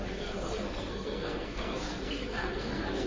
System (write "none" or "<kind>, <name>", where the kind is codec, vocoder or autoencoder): codec, SNAC